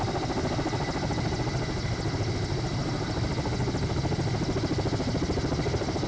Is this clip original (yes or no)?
yes